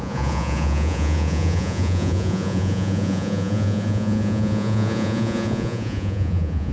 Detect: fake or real fake